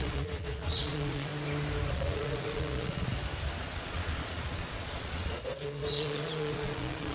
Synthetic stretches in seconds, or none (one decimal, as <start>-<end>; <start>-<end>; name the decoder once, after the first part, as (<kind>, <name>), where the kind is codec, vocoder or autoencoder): 0.0-1.3 (vocoder, Vocos); 1.9-3.1; 3.6-7.1